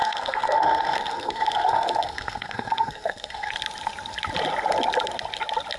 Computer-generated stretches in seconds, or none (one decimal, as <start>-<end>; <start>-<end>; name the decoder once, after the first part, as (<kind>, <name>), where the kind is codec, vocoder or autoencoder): 0.0-3.5 (codec, SNAC)